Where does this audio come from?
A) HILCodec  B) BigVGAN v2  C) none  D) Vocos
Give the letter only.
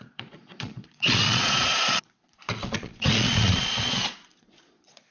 D